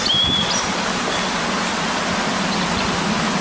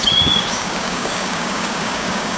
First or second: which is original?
first